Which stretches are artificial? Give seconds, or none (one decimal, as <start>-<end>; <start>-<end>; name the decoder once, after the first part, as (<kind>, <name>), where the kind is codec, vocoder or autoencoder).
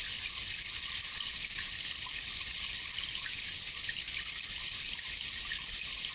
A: none